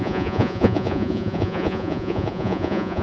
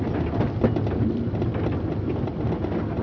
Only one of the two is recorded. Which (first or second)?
second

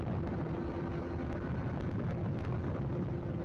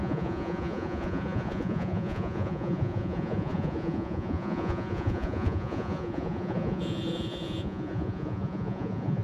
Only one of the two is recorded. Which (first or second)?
first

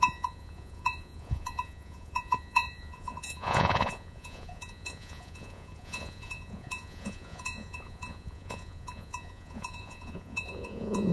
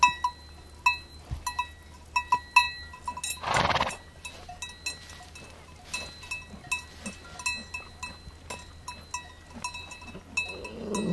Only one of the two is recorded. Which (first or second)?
second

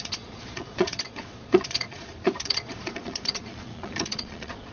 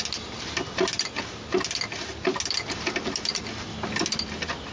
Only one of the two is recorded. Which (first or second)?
second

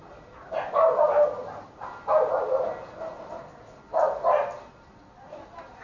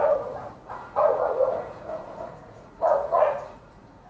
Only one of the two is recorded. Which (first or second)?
first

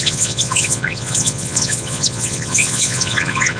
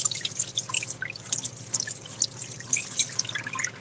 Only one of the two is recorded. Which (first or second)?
second